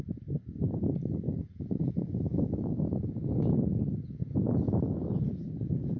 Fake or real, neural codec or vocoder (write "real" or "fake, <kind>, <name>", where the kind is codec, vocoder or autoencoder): real